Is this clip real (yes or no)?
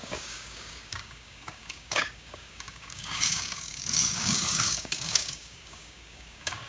no